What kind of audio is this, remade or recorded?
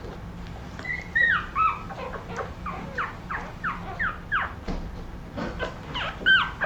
recorded